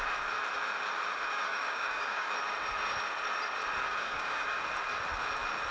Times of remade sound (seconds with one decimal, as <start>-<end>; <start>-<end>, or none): 1.5-2.3; 3.9-4.6